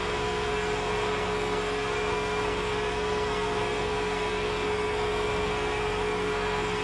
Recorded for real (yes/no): no